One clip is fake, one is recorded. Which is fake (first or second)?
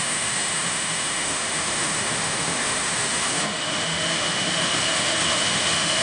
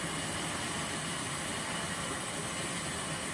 first